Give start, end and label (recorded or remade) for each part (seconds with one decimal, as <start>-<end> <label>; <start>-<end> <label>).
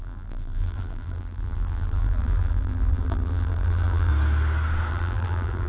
0.0-4.1 remade; 4.1-4.9 recorded; 4.9-5.7 remade